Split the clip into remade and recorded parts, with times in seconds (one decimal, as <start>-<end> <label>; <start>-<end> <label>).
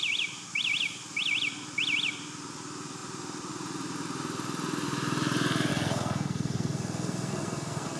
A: 0.0-5.7 recorded; 5.7-8.0 remade